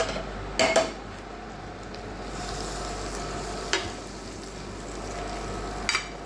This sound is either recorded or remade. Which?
recorded